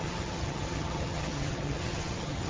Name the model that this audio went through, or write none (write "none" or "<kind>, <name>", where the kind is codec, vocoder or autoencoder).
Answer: vocoder, HiFi-GAN